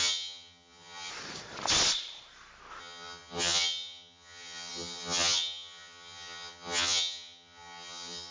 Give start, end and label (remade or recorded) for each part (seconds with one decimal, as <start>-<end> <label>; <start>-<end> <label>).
0.0-1.1 remade; 1.1-2.8 recorded; 2.8-8.3 remade